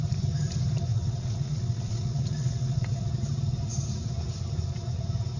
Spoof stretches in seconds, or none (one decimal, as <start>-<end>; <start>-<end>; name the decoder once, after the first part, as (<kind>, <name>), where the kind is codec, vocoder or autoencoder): 0.9-3.1 (vocoder, WaveNeXt)